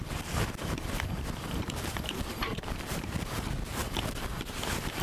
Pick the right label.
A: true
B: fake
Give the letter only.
B